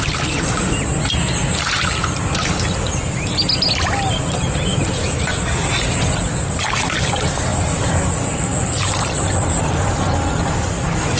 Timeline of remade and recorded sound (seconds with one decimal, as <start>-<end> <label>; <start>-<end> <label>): 0.0-11.2 recorded